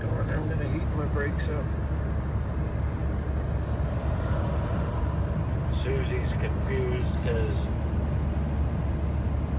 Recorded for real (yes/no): yes